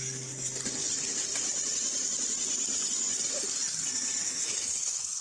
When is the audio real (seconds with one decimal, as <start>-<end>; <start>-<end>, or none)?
0.0-4.2